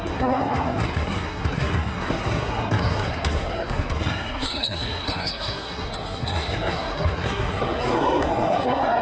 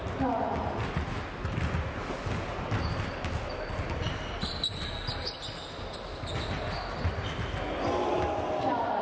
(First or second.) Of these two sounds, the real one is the second